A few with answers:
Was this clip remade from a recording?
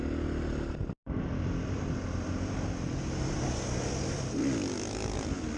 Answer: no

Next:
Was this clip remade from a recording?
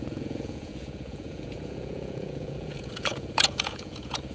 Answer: yes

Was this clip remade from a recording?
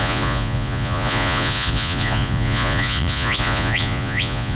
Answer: yes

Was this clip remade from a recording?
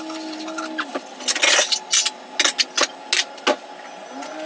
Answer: no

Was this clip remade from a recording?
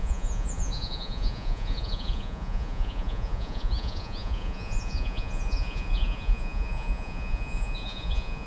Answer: yes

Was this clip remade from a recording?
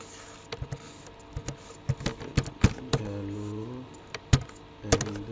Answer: no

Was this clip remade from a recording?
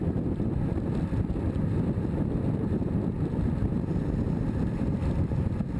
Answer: no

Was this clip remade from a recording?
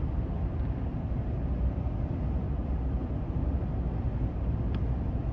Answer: no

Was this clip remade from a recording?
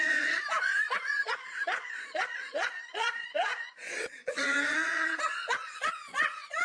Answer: yes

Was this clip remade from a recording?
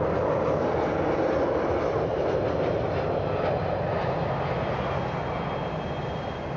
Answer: no